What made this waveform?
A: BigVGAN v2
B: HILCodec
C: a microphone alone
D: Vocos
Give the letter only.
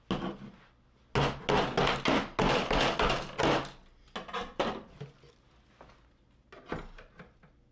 C